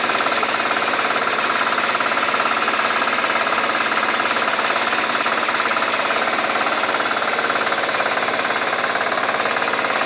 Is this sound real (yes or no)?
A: yes